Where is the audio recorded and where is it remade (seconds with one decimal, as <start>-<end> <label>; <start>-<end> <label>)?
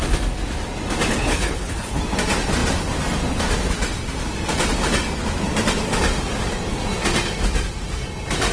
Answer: 0.0-1.1 recorded; 1.1-2.0 remade; 2.0-8.5 recorded